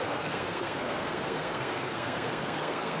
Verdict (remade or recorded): remade